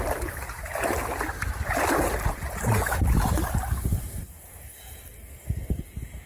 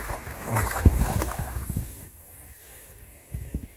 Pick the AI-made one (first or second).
second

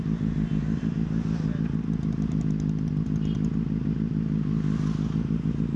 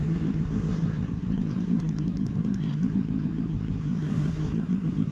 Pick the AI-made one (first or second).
second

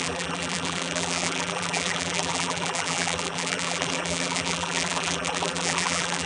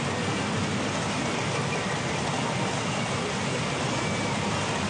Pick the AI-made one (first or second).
first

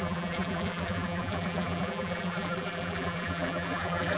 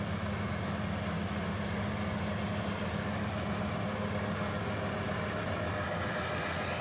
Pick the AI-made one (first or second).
first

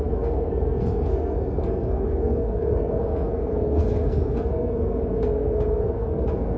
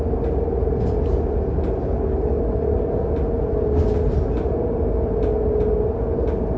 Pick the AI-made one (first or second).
first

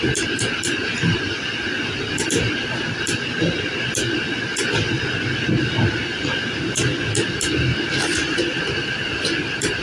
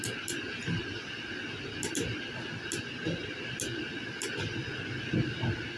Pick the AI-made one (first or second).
first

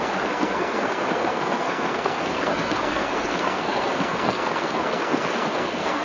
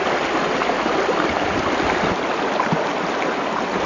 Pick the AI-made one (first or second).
first